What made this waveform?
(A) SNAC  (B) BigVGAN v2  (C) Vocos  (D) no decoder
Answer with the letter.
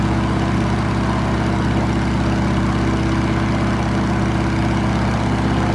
D